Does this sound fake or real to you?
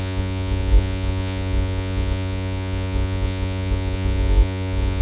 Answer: fake